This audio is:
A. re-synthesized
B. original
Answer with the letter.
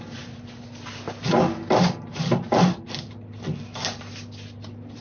B